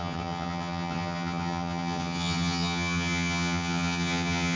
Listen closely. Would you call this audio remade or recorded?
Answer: remade